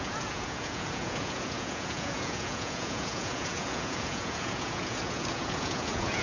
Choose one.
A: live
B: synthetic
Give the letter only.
B